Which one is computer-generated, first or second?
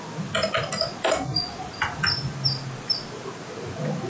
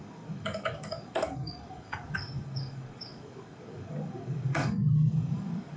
second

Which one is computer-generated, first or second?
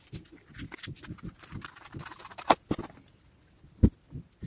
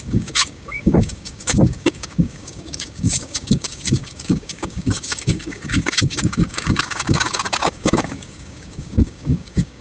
second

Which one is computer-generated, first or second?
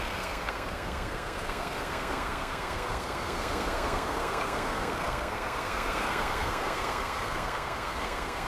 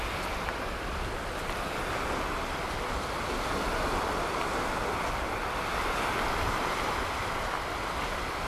first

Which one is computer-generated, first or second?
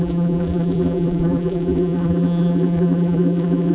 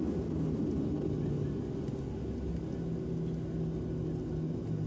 first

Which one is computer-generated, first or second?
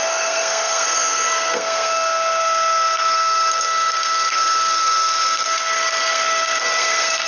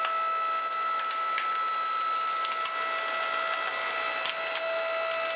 first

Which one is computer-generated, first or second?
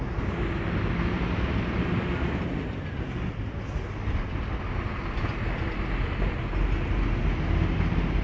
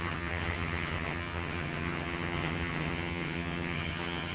second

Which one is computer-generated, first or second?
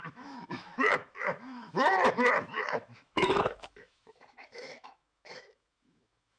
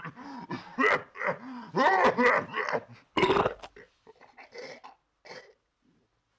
first